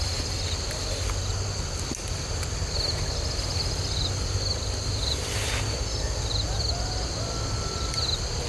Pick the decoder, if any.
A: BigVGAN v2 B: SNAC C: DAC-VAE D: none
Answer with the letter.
D